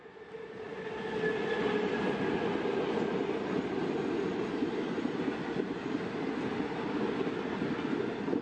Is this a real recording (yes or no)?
yes